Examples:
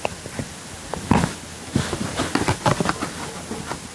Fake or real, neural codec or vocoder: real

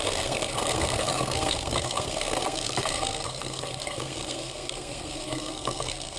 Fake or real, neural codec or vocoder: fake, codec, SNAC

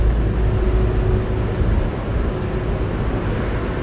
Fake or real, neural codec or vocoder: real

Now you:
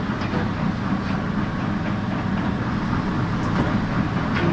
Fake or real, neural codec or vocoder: real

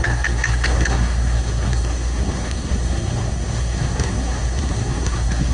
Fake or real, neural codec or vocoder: fake, codec, SNAC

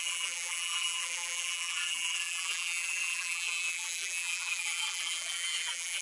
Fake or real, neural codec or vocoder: fake, vocoder, BigVGAN v2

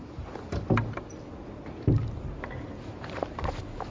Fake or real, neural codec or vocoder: real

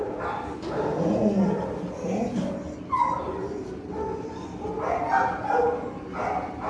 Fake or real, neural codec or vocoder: real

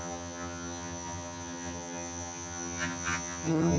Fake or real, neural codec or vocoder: fake, vocoder, HiFi-GAN